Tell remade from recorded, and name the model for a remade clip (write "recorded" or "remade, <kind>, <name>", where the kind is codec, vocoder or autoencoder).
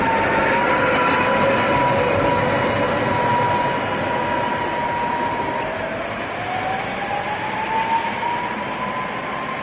recorded